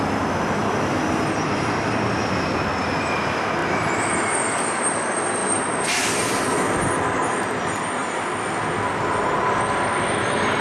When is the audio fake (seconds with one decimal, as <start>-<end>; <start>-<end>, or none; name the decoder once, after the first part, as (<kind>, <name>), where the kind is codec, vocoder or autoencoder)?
none